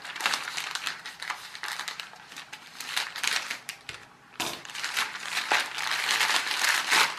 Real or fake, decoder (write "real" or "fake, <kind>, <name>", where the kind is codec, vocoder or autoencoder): fake, vocoder, BigVGAN v2